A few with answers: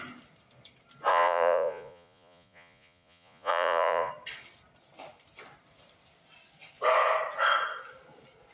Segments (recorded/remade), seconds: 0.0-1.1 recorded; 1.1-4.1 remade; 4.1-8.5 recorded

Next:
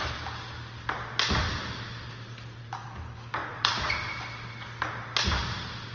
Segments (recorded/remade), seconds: 0.0-3.5 recorded; 3.5-4.1 remade; 4.1-5.9 recorded